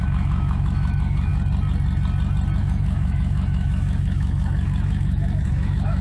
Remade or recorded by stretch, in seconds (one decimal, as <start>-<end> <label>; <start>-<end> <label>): 0.0-1.3 remade; 1.3-2.6 recorded; 2.6-6.0 remade